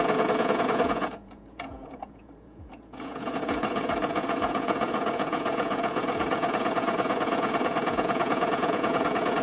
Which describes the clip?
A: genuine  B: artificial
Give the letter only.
B